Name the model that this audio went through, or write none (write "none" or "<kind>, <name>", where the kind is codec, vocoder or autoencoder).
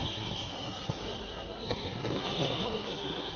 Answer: codec, SNAC